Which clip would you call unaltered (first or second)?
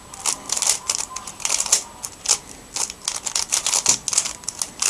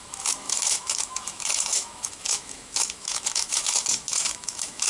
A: first